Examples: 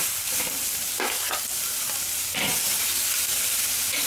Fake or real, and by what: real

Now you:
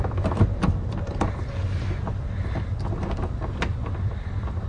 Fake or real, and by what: real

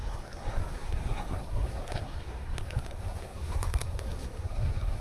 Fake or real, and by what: fake, codec, SNAC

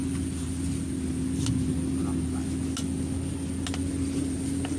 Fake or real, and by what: real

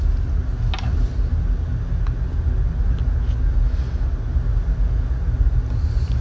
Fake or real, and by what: real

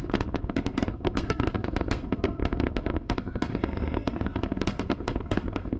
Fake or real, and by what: fake, codec, SNAC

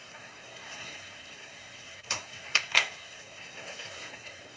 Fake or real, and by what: fake, codec, SNAC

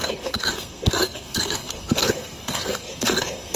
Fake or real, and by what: fake, codec, SNAC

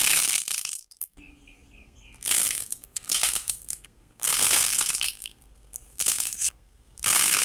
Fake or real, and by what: fake, codec, SNAC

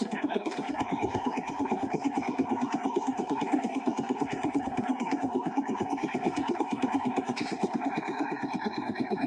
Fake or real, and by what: fake, codec, SNAC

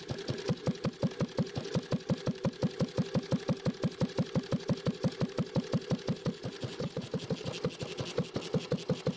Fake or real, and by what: real